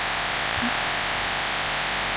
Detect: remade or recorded recorded